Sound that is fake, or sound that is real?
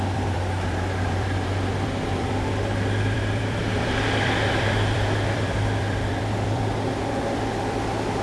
fake